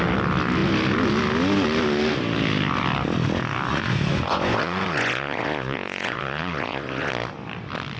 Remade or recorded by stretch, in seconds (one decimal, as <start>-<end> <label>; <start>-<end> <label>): 0.0-3.7 recorded; 3.7-7.1 remade; 7.1-8.0 recorded